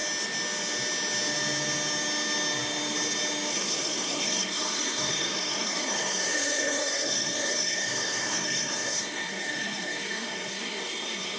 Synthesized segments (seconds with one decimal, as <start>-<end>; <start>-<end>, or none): 3.5-11.4

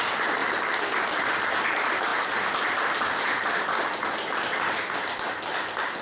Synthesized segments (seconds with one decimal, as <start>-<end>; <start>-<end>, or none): none

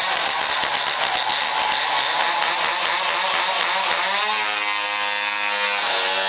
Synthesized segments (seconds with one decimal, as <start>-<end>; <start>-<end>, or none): 0.0-0.5; 1.3-2.2

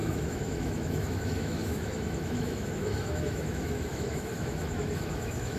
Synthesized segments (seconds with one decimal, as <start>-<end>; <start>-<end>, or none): 0.0-5.6

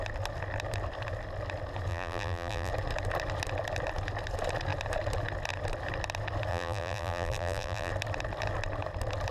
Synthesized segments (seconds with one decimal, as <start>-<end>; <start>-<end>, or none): 1.9-2.7; 6.5-7.9